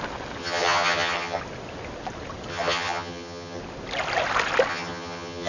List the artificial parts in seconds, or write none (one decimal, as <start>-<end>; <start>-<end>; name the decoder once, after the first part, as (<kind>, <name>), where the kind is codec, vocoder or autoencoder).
0.4-1.4 (vocoder, HiFi-GAN); 2.5-3.6; 4.7-5.5